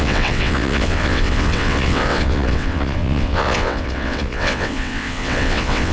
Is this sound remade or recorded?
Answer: remade